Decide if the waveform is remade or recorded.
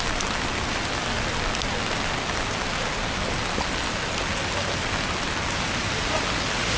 recorded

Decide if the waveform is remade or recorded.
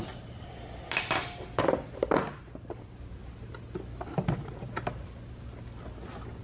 recorded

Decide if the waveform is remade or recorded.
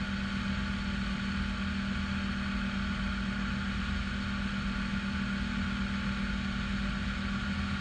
recorded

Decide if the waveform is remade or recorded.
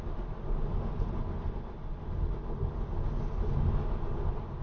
recorded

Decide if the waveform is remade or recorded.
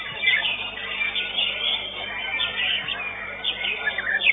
recorded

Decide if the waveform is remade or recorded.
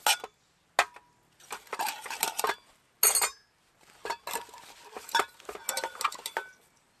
recorded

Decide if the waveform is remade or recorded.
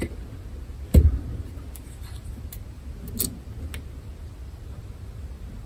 recorded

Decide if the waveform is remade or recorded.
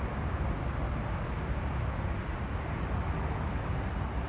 recorded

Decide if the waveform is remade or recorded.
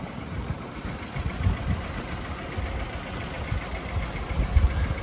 recorded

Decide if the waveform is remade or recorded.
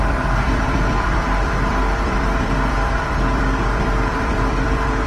remade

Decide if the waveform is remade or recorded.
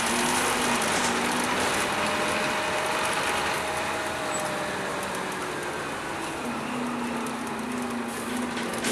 recorded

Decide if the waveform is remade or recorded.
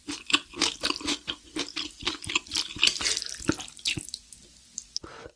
recorded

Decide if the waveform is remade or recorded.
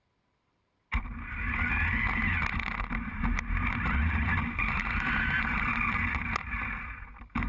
recorded